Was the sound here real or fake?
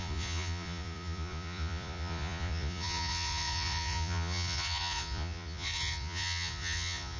fake